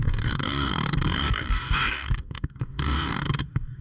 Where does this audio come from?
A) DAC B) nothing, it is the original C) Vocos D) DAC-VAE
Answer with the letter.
A